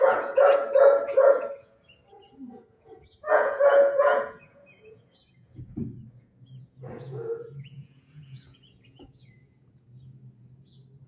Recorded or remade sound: remade